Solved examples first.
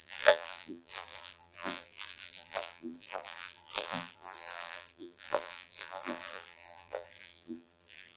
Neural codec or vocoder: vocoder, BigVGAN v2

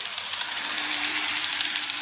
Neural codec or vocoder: vocoder, BigVGAN v2